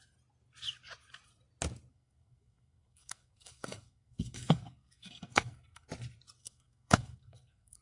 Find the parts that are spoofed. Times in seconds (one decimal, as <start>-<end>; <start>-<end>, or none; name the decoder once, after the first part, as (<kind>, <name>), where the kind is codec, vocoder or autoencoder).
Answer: 1.9-5.9 (codec, SNAC); 6.4-7.8